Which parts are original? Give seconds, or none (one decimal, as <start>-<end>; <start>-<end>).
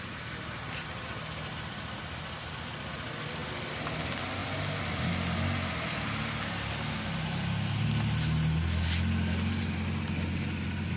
0.0-11.0